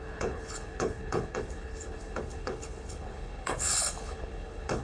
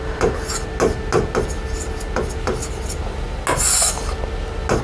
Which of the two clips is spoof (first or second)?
first